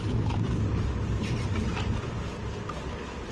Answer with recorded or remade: recorded